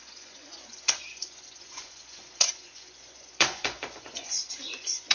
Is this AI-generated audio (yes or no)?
yes